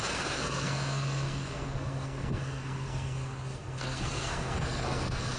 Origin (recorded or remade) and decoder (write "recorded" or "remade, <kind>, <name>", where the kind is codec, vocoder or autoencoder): remade, codec, SNAC